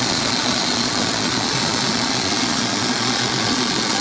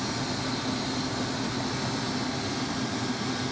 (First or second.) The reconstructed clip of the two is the first